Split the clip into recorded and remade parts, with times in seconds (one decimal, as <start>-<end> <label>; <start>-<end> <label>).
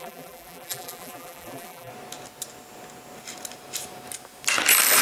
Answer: 0.0-1.9 remade; 1.9-5.0 recorded